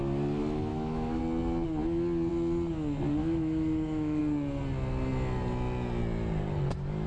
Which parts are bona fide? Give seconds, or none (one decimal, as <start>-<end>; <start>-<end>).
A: 0.0-0.7; 1.2-3.2; 4.2-7.1